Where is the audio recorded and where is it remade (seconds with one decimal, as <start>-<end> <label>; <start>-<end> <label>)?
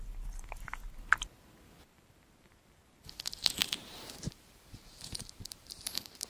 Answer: 0.0-3.6 recorded; 3.6-6.3 remade